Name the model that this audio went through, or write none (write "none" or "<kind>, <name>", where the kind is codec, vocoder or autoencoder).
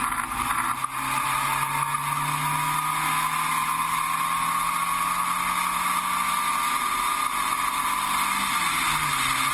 none